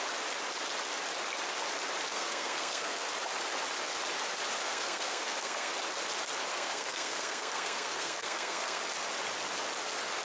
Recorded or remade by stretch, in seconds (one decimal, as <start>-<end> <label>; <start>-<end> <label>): 0.0-2.1 recorded; 2.1-3.1 remade; 3.1-4.6 recorded; 4.6-5.7 remade; 5.7-6.5 recorded; 6.5-8.8 remade; 8.8-10.2 recorded